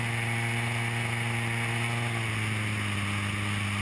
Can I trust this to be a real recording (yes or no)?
yes